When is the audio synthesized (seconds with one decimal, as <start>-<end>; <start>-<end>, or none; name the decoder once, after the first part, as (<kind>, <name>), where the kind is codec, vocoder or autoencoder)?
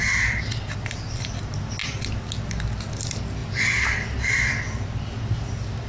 none